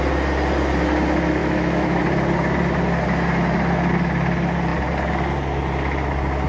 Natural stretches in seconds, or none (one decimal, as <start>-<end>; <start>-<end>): 0.0-1.4; 2.0-6.5